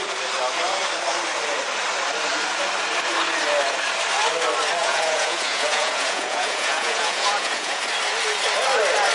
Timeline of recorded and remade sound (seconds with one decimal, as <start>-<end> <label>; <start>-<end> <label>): 0.0-4.8 recorded; 4.8-7.8 remade; 7.8-9.1 recorded

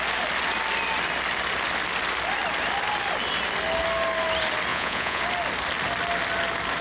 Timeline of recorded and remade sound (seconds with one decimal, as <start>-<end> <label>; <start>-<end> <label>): 0.0-4.7 recorded; 4.7-5.2 remade; 5.2-6.8 recorded

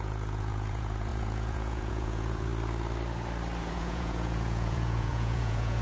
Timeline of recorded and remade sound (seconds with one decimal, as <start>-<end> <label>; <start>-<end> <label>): 0.0-2.5 remade; 2.5-3.6 recorded; 3.6-5.8 remade

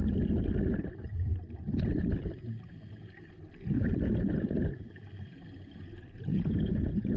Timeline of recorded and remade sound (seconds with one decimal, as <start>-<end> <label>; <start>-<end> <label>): 0.0-6.3 recorded; 6.3-7.2 remade

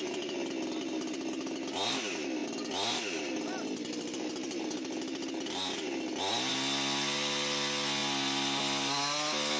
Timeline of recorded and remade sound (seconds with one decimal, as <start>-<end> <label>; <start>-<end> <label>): 0.0-9.6 recorded

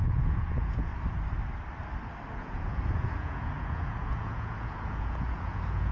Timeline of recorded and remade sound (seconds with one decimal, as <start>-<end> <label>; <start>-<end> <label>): 0.0-0.9 remade; 0.9-2.3 recorded; 2.3-5.9 remade

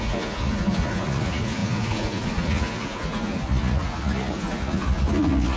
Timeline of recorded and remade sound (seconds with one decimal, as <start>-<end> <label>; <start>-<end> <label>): 0.0-5.6 remade

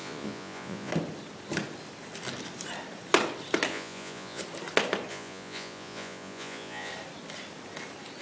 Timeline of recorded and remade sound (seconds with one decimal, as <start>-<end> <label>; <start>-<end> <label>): 0.0-0.9 remade; 0.9-3.7 recorded; 3.7-4.4 remade; 4.4-5.1 recorded; 5.1-6.9 remade; 6.9-8.2 recorded